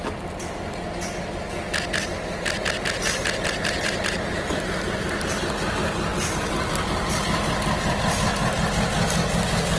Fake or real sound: real